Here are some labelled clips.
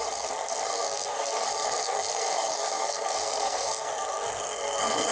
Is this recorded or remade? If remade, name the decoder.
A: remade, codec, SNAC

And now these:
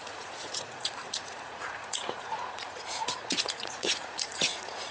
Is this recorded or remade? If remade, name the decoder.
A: remade, vocoder, Vocos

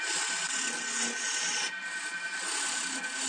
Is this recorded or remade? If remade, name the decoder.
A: recorded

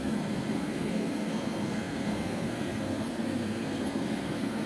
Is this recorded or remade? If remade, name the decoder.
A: remade, codec, SNAC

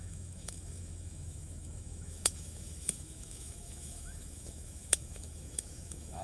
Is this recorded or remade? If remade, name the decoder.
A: remade, autoencoder, DAC-VAE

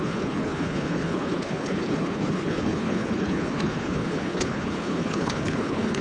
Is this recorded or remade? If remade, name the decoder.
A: remade, codec, HILCodec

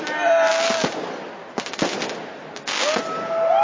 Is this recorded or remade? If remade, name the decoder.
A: recorded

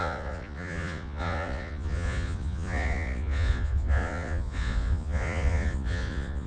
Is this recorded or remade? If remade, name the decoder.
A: remade, vocoder, Vocos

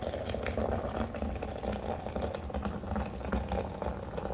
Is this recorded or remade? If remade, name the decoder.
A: recorded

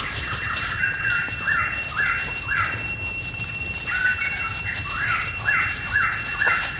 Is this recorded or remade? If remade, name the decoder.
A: recorded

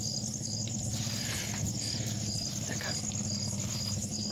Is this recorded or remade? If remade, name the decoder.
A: recorded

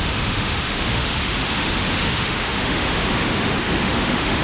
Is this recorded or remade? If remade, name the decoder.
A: remade, autoencoder, DAC-VAE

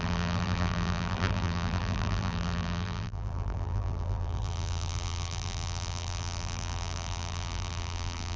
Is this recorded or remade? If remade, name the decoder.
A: remade, vocoder, BigVGAN v2